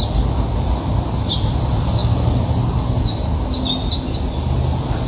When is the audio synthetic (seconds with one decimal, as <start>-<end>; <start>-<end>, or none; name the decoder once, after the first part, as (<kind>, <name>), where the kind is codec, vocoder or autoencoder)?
none